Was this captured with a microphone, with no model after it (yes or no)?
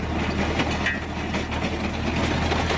yes